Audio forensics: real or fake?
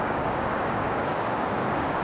fake